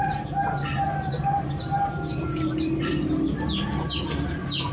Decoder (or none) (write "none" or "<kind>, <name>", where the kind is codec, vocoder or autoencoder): none